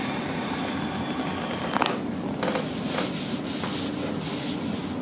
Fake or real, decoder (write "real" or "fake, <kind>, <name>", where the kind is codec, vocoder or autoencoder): real